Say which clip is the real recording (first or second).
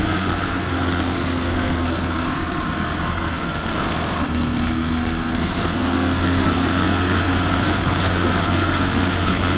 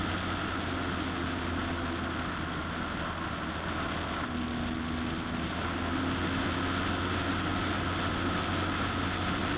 second